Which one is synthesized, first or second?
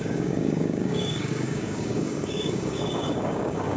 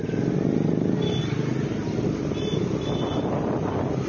first